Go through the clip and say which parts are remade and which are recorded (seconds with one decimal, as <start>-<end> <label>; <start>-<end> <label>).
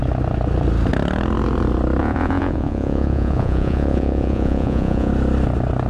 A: 0.0-2.0 recorded; 2.0-5.1 remade; 5.1-5.9 recorded